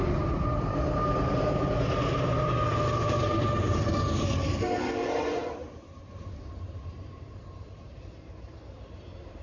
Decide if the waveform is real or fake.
fake